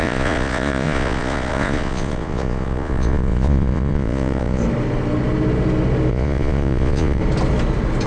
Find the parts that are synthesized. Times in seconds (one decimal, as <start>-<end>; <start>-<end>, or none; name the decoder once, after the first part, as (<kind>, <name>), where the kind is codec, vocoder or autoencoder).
0.0-4.6 (vocoder, Vocos); 6.1-7.2